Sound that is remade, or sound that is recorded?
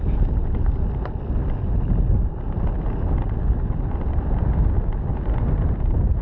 recorded